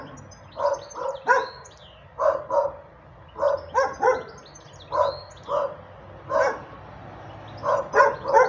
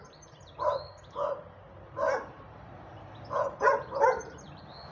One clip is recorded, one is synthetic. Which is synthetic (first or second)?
second